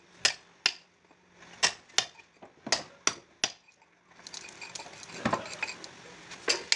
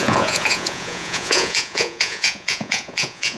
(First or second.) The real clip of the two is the first